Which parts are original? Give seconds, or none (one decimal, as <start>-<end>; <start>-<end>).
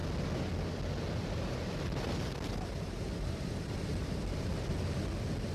0.0-1.2; 4.5-5.5